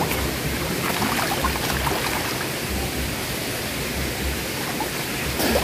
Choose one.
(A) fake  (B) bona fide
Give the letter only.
B